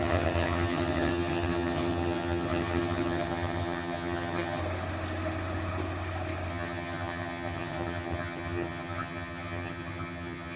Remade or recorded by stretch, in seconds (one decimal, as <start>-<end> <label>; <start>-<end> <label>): 0.0-4.6 remade; 4.6-6.5 recorded; 6.5-10.6 remade